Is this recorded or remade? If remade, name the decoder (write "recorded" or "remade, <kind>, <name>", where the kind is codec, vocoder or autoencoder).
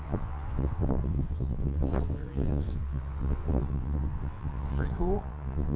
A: remade, vocoder, WaveNeXt